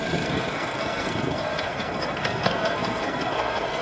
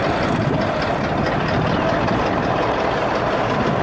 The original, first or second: second